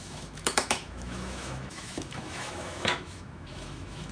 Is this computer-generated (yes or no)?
yes